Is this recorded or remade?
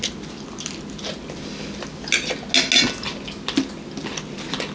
recorded